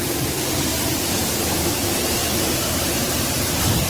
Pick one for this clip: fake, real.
fake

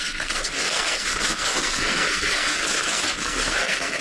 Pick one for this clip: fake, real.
fake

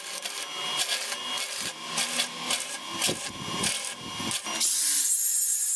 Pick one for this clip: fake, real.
real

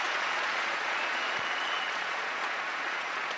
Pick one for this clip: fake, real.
fake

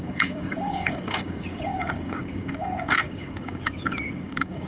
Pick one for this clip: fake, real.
fake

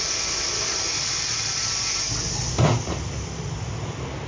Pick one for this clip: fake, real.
real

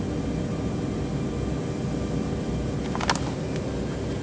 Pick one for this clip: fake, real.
real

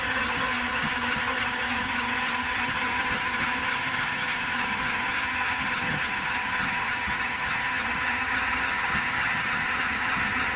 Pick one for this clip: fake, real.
fake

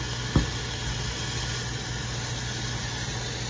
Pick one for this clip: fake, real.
real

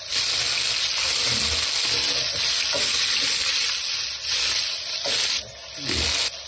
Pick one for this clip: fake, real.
real